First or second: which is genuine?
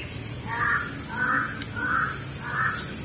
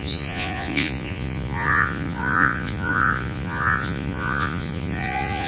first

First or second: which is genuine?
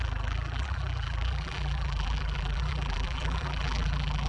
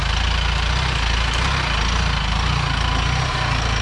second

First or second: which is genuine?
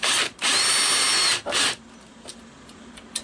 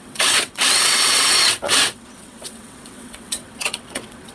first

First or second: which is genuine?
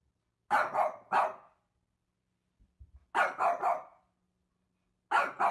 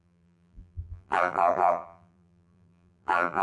first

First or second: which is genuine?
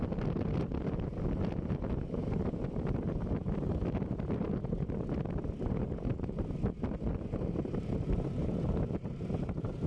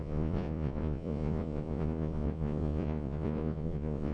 first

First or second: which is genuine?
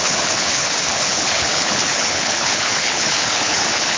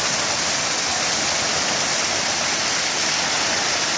second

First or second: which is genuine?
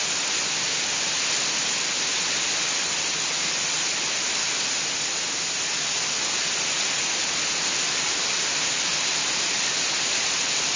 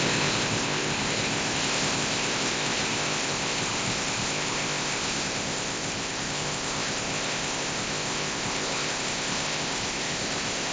first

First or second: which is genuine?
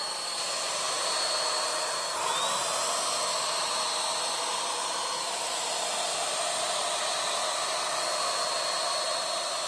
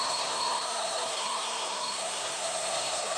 first